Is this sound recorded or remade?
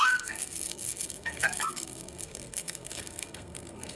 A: remade